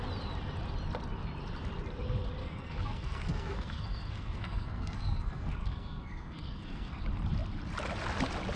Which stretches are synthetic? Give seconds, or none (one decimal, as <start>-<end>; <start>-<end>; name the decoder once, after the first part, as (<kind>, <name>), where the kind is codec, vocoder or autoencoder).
2.4-7.0 (codec, SNAC)